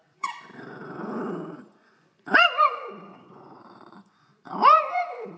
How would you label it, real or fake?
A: fake